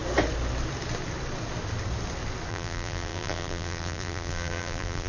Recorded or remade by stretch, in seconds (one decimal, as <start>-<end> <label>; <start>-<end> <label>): 0.0-2.5 recorded; 2.5-5.1 remade